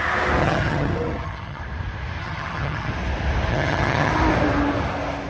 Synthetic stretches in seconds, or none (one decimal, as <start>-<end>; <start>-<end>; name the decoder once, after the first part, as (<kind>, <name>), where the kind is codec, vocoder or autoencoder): 0.4-1.6 (vocoder, HiFi-GAN); 2.2-2.9; 3.5-4.1